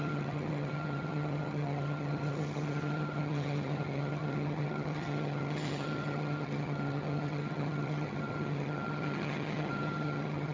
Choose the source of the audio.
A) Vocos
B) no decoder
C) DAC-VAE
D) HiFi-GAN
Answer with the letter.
D